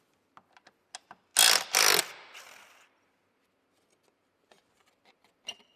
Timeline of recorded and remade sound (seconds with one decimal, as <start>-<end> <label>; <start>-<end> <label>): 0.0-5.8 recorded